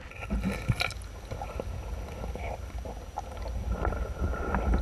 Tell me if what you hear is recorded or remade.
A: recorded